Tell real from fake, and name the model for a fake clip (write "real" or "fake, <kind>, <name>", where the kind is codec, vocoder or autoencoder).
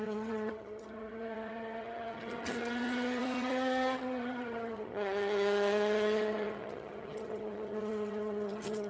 fake, vocoder, HiFi-GAN